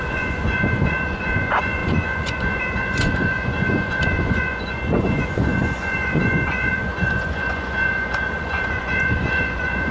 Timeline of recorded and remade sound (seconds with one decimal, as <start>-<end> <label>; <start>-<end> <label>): 0.0-9.9 remade